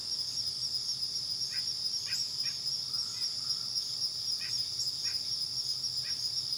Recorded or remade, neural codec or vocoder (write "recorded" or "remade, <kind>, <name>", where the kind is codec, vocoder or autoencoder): recorded